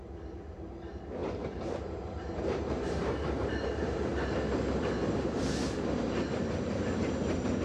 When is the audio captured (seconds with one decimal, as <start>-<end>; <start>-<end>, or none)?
4.1-4.8